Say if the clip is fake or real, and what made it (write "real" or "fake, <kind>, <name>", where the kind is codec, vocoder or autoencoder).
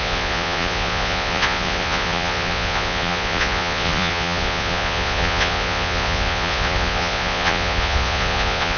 fake, vocoder, Vocos